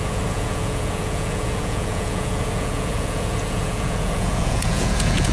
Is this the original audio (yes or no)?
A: no